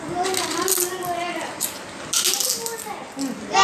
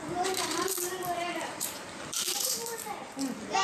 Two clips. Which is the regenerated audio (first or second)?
second